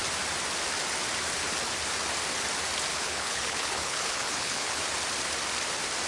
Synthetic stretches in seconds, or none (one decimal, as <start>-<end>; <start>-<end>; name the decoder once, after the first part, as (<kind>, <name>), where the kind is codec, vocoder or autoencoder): 2.9-4.8 (codec, HILCodec)